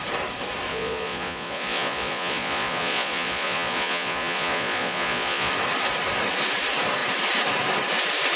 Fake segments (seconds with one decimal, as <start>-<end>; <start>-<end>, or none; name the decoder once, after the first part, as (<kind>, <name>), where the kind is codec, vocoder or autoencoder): 0.7-5.5 (vocoder, Vocos)